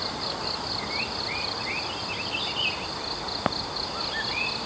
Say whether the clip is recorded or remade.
recorded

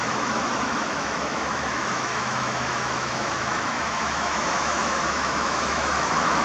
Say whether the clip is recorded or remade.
remade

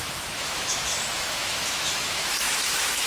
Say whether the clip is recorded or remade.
remade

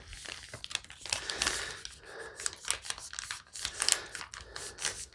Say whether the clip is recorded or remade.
recorded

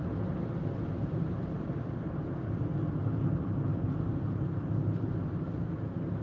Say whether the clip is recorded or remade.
recorded